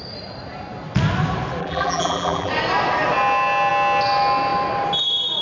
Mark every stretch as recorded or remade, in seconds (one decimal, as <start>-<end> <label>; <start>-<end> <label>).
0.0-1.6 recorded; 1.6-2.5 remade; 2.5-5.4 recorded